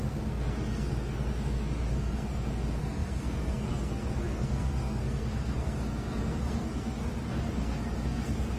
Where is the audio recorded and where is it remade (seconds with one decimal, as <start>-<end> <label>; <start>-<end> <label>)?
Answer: 0.0-8.6 remade